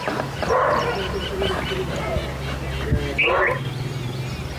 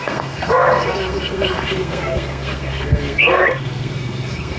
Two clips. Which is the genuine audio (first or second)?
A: first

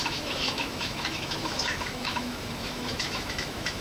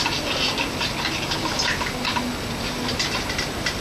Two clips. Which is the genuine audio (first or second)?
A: second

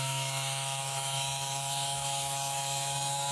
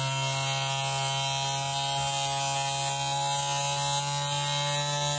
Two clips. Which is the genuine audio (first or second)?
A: second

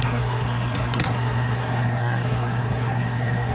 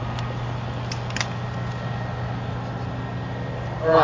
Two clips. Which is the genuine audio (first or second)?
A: second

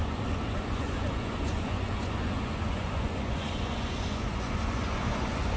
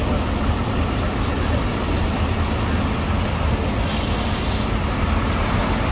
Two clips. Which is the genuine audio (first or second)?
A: second